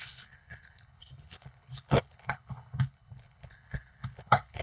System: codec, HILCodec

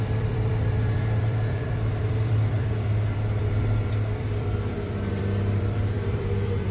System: vocoder, BigVGAN v2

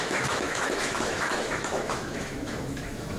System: autoencoder, DAC-VAE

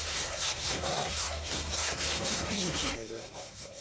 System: codec, SNAC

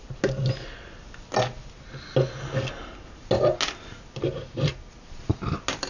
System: none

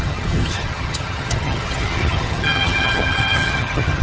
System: vocoder, HiFi-GAN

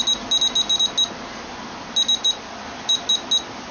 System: none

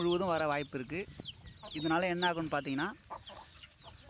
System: none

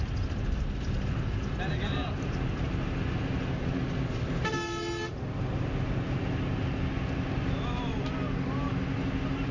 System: none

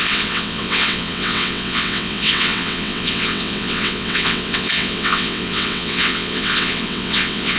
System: vocoder, WaveNeXt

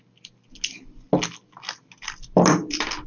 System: none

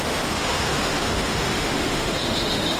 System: autoencoder, DAC-VAE